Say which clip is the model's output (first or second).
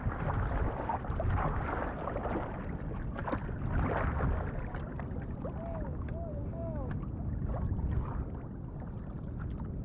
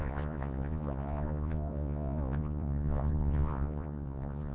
second